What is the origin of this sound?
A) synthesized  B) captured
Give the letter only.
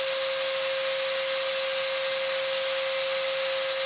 B